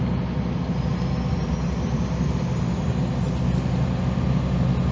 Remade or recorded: recorded